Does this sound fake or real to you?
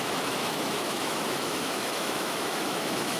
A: fake